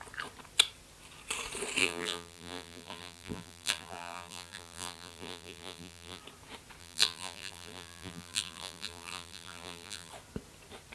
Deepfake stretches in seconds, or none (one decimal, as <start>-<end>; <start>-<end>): 1.8-6.2; 6.8-10.1